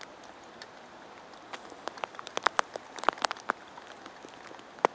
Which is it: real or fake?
real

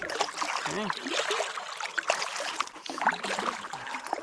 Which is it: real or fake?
real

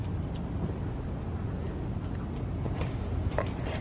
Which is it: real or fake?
real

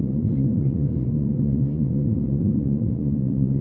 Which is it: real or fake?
fake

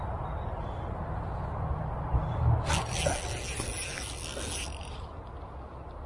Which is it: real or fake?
real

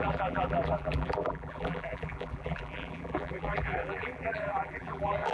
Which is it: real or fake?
fake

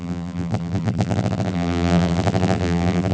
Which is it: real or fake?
fake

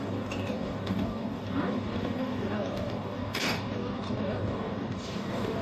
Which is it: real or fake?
fake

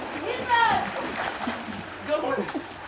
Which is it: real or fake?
real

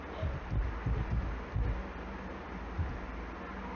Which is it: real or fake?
real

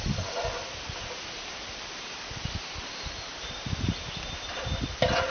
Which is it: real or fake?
real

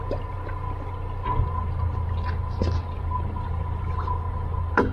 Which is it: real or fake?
real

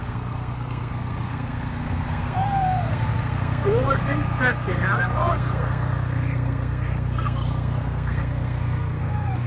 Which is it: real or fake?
fake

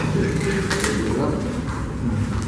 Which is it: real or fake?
real